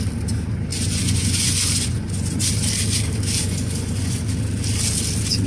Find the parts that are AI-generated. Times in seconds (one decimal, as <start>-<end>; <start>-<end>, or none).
0.7-2.5; 3.4-4.2